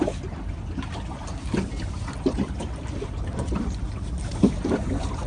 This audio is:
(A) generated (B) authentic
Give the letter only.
B